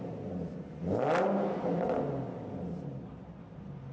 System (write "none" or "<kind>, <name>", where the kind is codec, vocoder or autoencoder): none